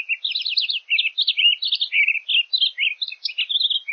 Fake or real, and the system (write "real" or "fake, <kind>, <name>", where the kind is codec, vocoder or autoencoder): real